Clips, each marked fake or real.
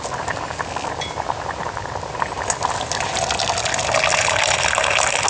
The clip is real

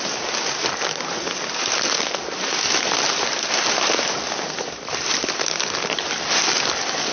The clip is real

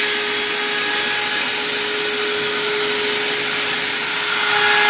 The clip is real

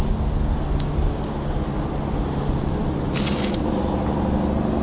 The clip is real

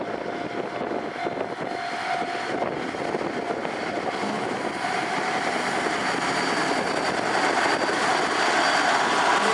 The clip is real